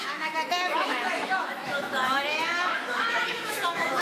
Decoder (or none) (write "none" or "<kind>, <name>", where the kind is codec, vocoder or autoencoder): autoencoder, DAC-VAE